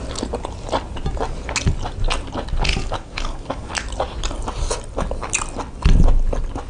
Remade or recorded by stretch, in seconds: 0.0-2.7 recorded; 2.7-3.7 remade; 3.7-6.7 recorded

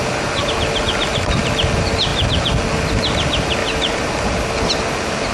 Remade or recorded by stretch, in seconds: 0.0-3.6 recorded; 3.6-4.1 remade; 4.1-5.3 recorded

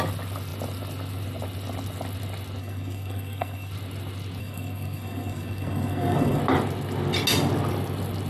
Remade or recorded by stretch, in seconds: 0.0-2.6 recorded; 2.6-3.7 remade; 3.7-4.4 recorded; 4.4-6.4 remade; 6.4-8.3 recorded